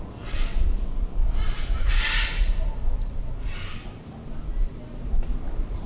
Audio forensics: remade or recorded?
recorded